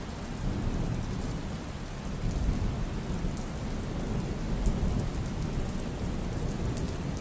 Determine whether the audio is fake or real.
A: real